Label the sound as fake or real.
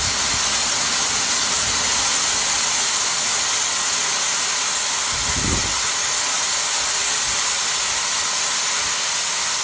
real